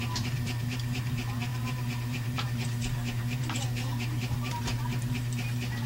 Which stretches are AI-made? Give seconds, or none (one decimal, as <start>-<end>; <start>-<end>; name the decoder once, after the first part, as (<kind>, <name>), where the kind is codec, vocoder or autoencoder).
0.0-5.9 (vocoder, BigVGAN v2)